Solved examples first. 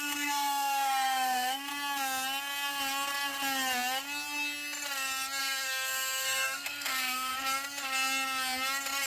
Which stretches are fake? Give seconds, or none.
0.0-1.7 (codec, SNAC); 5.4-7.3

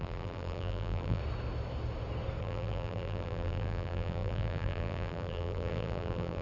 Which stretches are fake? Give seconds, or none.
0.0-1.2 (vocoder, BigVGAN v2); 2.4-6.4